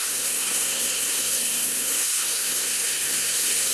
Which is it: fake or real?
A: fake